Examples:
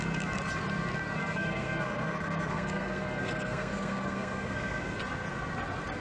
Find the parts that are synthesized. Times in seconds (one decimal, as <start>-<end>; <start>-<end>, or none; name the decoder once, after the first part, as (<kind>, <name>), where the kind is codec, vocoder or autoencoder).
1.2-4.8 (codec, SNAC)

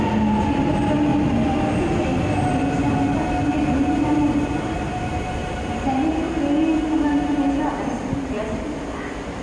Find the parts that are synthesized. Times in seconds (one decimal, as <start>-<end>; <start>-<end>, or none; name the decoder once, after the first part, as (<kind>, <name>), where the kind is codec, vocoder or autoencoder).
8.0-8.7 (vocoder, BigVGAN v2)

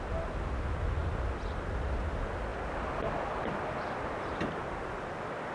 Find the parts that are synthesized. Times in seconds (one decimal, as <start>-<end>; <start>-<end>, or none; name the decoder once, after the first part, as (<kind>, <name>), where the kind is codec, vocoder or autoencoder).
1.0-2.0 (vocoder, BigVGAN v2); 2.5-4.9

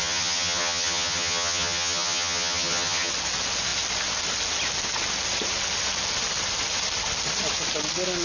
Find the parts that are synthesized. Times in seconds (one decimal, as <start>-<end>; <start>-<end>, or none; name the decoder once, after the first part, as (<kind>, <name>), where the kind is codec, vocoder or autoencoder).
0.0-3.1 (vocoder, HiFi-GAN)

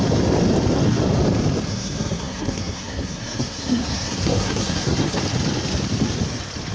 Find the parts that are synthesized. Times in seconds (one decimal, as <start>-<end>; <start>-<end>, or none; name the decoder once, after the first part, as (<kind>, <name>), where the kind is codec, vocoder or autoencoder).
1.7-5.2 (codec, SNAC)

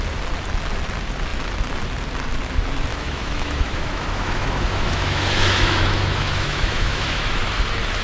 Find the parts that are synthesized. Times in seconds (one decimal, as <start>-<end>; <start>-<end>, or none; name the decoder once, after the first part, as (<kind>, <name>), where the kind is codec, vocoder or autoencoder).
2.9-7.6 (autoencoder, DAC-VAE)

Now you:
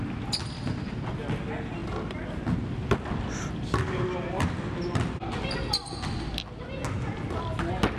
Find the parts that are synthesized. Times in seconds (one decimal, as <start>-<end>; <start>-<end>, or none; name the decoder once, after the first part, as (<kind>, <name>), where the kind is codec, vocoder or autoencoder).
none